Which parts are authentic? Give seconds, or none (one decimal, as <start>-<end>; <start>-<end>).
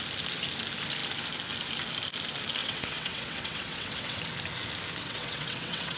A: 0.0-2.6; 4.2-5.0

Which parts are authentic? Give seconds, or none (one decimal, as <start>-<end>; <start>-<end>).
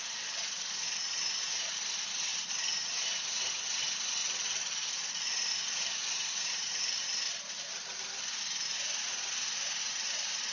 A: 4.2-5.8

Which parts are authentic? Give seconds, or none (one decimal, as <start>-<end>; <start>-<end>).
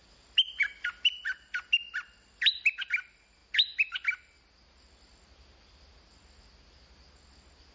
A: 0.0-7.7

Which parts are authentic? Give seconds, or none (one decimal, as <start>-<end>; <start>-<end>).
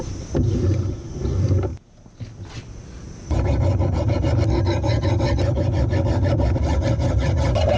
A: 0.0-7.8